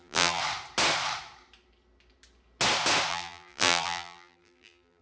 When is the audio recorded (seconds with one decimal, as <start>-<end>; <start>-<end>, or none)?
0.4-3.1